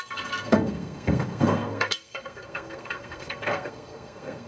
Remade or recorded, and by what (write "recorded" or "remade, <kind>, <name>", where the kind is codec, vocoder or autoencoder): remade, codec, SNAC